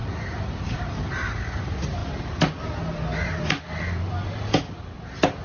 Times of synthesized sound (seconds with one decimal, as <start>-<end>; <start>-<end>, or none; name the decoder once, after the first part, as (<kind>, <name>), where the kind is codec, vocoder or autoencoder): 0.0-2.0 (vocoder, BigVGAN v2)